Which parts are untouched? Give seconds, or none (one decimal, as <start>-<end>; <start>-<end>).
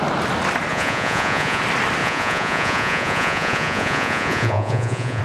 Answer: 0.0-0.7; 1.6-2.0